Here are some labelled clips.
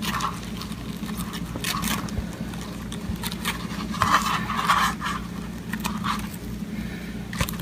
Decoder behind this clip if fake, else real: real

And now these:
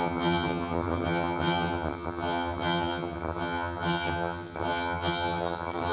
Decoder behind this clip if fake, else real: fake, vocoder, HiFi-GAN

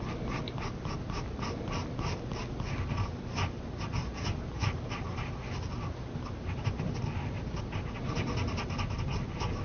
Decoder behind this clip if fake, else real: real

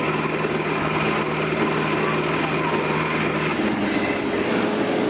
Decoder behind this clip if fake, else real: real